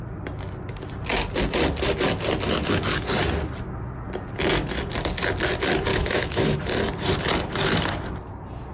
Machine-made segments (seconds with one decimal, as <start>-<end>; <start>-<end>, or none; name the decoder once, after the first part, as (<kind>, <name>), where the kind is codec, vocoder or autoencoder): 5.9-6.6 (autoencoder, DAC-VAE)

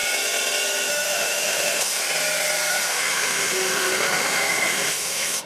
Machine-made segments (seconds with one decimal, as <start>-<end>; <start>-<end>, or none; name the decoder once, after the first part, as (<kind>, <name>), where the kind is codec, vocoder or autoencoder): 0.9-2.0 (autoencoder, DAC-VAE); 2.7-5.5

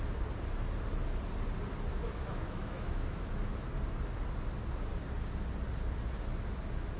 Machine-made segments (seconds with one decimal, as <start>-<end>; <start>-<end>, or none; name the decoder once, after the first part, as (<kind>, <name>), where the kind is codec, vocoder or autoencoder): 1.9-3.3 (autoencoder, DAC-VAE)

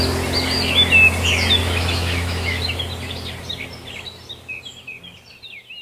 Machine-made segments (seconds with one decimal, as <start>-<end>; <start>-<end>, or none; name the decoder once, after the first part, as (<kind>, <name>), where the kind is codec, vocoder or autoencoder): 1.6-2.6 (autoencoder, DAC-VAE)

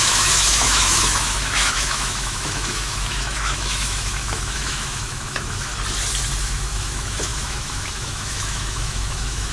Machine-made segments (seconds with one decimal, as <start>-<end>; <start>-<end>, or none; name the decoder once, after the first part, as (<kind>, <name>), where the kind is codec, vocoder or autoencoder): 0.0-5.7 (autoencoder, DAC-VAE); 6.4-9.5

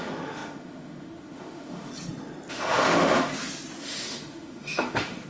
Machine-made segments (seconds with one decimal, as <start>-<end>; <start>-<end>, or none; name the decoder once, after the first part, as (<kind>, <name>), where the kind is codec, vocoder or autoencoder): 0.0-1.9 (autoencoder, DAC-VAE); 2.5-3.3; 3.8-5.3